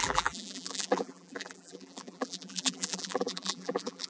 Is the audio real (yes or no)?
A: no